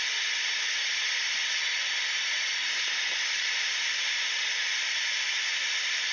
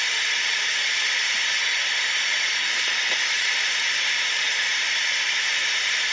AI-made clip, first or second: second